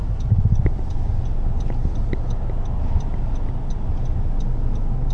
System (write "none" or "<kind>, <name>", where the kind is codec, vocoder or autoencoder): none